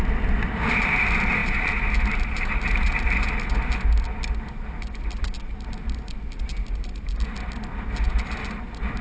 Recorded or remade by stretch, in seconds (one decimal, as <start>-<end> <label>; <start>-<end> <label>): 0.0-1.4 recorded; 1.4-1.9 remade; 1.9-9.0 recorded